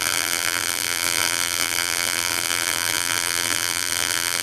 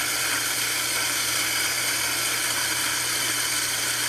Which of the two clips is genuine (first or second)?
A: second